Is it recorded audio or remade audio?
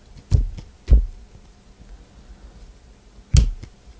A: recorded